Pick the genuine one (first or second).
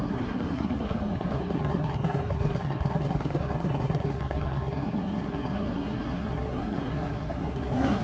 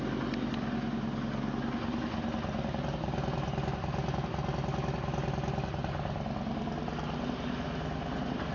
second